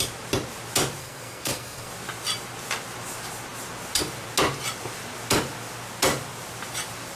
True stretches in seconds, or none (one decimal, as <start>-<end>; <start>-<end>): 0.0-1.0; 1.9-7.2